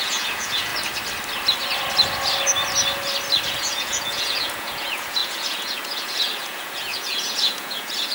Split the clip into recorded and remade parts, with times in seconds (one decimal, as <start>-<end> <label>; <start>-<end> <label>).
0.0-0.7 remade; 0.7-3.6 recorded; 3.6-8.1 remade